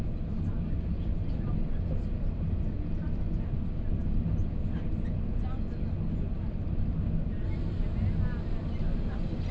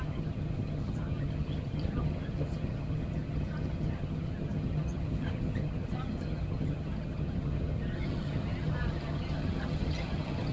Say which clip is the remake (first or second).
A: second